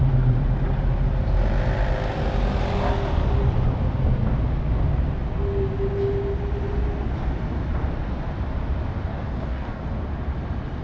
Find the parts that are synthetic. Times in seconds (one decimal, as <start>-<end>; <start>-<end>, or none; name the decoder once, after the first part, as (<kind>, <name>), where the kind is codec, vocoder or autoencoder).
9.1-9.8 (codec, DAC)